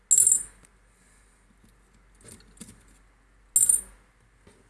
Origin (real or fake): real